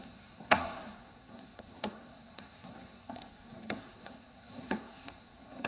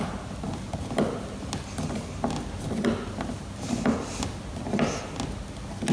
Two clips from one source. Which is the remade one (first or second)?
first